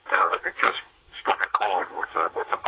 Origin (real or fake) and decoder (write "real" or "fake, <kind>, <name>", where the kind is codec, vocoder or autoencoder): fake, codec, SNAC